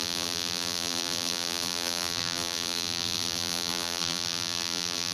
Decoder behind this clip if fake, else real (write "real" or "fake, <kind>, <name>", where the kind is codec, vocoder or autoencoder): fake, vocoder, BigVGAN v2